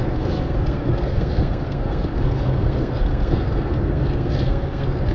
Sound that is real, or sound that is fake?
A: fake